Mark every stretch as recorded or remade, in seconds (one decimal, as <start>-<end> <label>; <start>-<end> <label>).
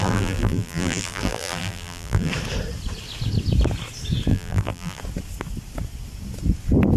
0.0-2.3 remade; 2.3-4.3 recorded; 4.3-5.0 remade; 5.0-7.0 recorded